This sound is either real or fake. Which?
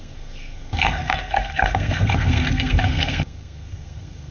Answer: fake